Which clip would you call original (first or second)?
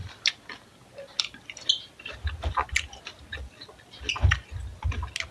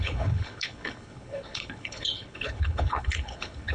first